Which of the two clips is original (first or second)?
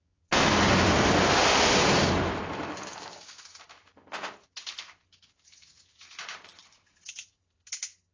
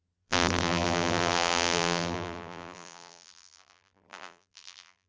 first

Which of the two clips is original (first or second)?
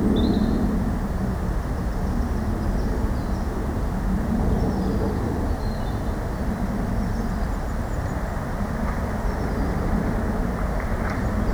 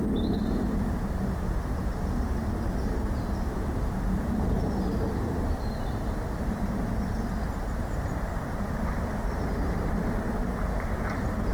first